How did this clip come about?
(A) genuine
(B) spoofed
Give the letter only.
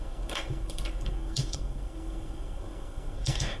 B